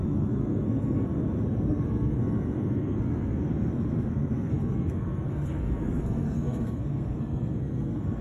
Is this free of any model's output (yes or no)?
no